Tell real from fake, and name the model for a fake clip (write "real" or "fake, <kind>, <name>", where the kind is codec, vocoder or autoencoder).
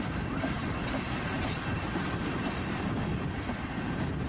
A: fake, vocoder, BigVGAN v2